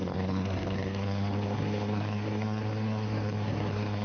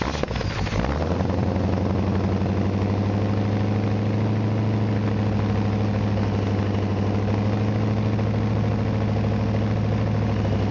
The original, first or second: second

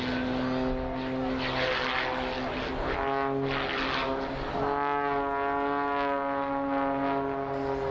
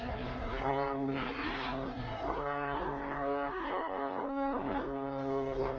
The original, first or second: first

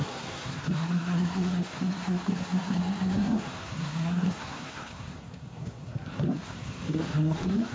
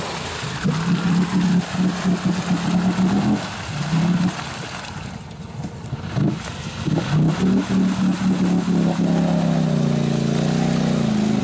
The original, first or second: second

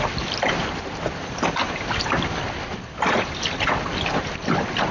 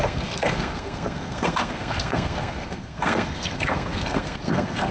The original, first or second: first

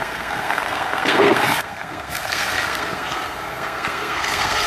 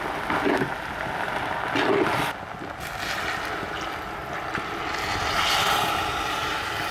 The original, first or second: second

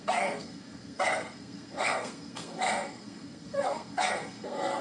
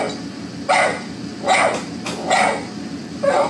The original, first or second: second